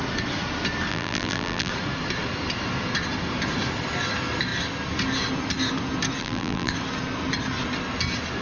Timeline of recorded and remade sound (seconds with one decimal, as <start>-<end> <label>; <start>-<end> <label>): 0.0-0.9 recorded; 0.9-1.7 remade; 1.7-6.2 recorded; 6.2-6.7 remade; 6.7-8.4 recorded